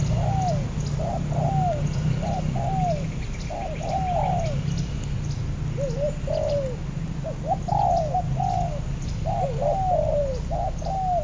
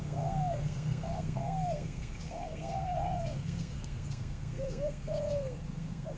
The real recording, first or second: first